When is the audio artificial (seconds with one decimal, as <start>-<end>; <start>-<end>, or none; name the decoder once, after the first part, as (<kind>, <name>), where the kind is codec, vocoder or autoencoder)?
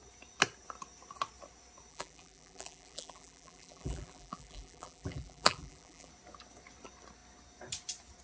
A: 1.9-6.1 (vocoder, BigVGAN v2)